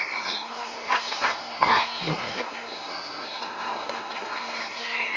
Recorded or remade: remade